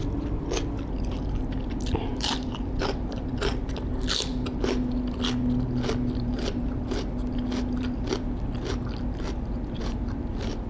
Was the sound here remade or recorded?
recorded